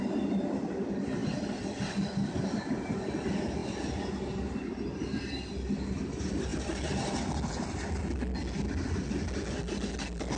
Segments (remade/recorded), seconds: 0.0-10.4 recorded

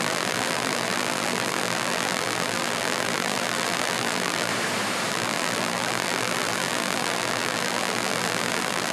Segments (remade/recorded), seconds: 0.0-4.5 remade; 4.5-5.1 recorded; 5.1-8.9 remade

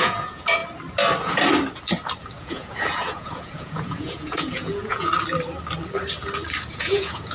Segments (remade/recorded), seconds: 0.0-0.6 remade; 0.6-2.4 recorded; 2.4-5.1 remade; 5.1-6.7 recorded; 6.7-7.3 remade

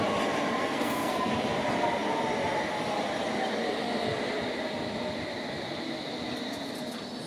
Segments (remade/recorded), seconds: 0.0-0.6 recorded; 0.6-1.3 remade; 1.3-7.3 recorded

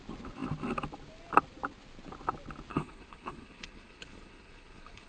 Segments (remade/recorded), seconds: 0.0-2.7 recorded; 2.7-5.1 remade